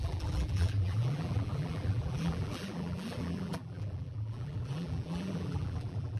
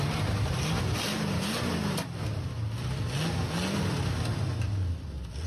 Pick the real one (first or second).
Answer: second